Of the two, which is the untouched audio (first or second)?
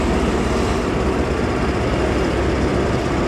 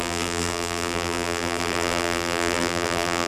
first